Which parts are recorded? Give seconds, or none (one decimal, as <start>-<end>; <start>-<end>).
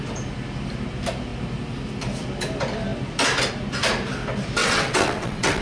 0.0-4.6